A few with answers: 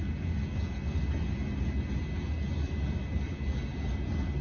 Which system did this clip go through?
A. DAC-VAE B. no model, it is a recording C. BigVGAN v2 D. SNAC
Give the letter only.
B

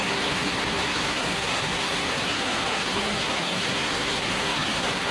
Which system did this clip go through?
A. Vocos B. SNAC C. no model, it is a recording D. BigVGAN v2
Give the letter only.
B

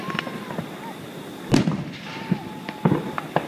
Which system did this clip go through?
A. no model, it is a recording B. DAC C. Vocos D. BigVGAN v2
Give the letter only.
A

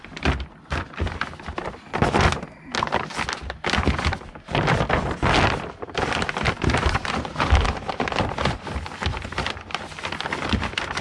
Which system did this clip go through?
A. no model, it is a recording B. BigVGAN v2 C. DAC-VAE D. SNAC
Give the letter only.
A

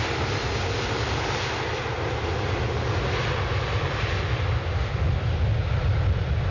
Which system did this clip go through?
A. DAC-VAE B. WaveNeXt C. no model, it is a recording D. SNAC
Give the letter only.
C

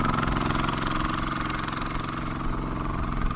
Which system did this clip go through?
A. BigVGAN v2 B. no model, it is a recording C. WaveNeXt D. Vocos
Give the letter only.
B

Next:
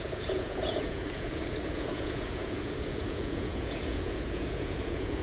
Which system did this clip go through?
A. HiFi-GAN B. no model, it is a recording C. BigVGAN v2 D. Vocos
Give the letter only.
D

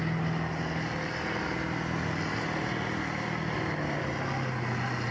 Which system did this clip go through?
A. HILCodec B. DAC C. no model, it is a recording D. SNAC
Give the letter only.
C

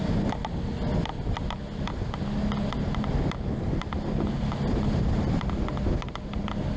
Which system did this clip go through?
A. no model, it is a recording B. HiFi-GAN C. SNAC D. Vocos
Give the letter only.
A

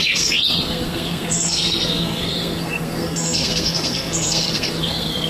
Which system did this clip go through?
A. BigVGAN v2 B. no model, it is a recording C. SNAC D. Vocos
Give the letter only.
C